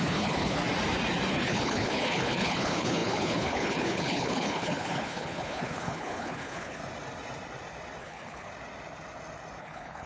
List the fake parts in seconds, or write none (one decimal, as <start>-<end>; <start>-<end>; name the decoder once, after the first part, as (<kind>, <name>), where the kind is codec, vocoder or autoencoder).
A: 0.0-0.6 (codec, HILCodec); 1.3-6.8; 8.0-8.5; 9.6-10.1

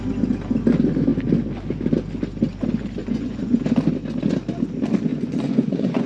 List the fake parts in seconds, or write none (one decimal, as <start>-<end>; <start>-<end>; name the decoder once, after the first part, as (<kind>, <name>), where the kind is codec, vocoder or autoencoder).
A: 3.0-3.6 (vocoder, Vocos); 5.1-6.1